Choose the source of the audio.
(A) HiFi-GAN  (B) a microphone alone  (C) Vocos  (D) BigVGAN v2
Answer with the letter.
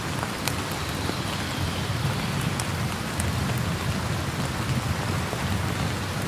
B